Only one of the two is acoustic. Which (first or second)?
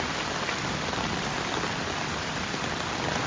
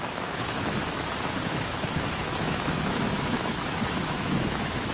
first